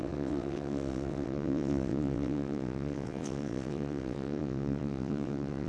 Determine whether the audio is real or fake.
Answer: fake